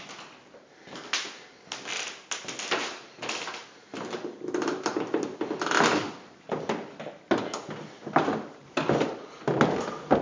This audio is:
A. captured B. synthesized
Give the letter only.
A